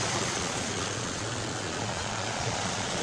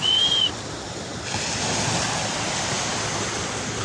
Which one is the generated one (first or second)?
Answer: first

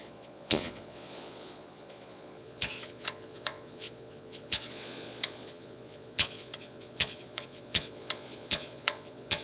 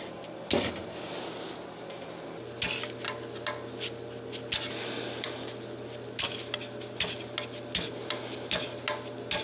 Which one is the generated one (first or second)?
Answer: first